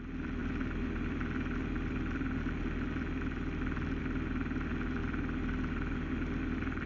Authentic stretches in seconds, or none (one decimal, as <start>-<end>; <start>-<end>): 0.0-6.9